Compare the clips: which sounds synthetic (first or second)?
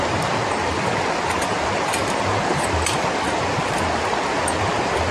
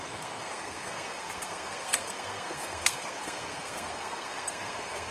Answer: second